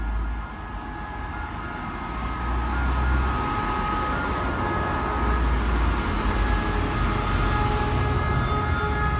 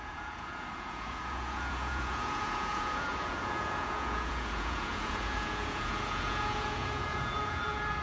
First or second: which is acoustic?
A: first